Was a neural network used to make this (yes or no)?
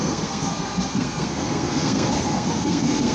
yes